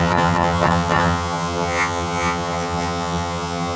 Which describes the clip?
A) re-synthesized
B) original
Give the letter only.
A